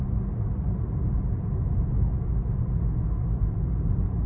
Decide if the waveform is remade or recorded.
recorded